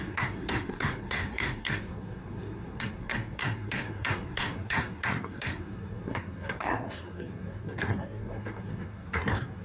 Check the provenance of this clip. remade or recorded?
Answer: remade